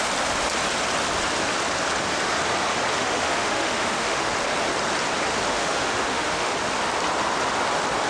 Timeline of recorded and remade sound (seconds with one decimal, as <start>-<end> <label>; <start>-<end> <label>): 0.0-2.9 recorded; 2.9-4.3 remade; 4.3-5.5 recorded; 5.5-6.5 remade; 6.5-8.1 recorded